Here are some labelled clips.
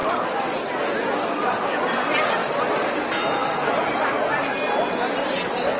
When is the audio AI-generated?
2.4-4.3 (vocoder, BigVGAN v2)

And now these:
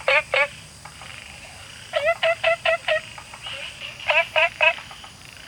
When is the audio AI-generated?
0.0-3.6 (vocoder, BigVGAN v2); 4.2-5.5

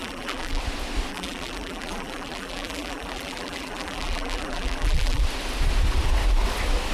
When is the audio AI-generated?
0.0-0.6 (vocoder, BigVGAN v2); 1.1-5.2

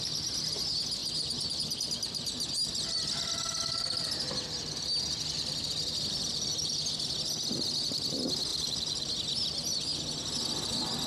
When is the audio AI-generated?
8.5-9.1 (vocoder, BigVGAN v2)

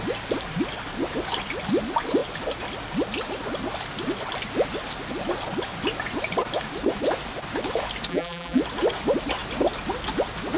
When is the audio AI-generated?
8.1-8.6 (vocoder, BigVGAN v2)